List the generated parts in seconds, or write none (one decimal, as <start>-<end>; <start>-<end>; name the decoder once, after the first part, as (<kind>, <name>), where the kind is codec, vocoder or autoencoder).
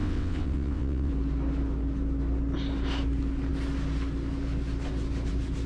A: 0.0-1.1 (vocoder, WaveNeXt)